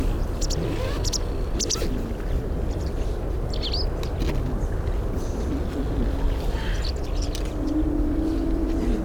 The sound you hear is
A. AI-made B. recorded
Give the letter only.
B